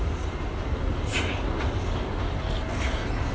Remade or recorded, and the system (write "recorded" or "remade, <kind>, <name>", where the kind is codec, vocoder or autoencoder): recorded